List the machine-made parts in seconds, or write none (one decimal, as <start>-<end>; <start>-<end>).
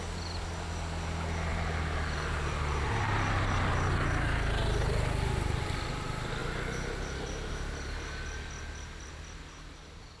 none